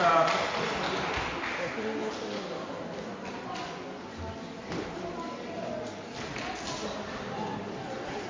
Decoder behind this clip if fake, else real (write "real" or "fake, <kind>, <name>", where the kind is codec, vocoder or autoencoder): real